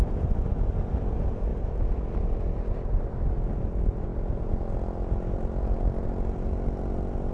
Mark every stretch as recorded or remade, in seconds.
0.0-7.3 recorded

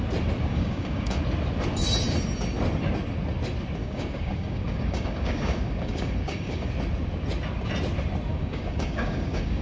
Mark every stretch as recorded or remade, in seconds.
0.0-0.5 recorded; 0.5-1.2 remade; 1.2-3.8 recorded; 3.8-6.7 remade; 6.7-8.3 recorded; 8.3-9.6 remade

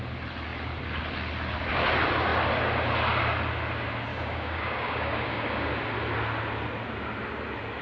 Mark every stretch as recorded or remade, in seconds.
0.0-4.1 recorded; 4.1-5.7 remade; 5.7-7.8 recorded

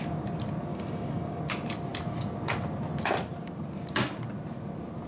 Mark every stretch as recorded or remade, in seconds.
0.0-0.7 recorded; 0.7-1.4 remade; 1.4-5.1 recorded

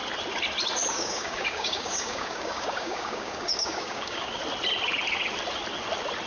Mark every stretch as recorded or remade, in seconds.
0.0-0.9 recorded; 0.9-4.4 remade; 4.4-6.3 recorded